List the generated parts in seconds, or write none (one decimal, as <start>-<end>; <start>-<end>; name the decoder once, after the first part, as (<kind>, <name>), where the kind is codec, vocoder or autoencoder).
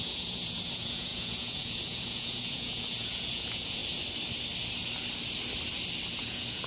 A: 0.0-3.8 (vocoder, Vocos); 6.1-6.7